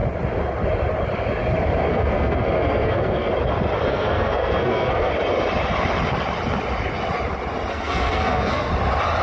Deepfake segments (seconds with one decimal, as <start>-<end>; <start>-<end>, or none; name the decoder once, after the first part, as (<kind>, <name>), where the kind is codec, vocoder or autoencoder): 1.9-3.3 (codec, SNAC); 3.9-5.1; 7.7-8.7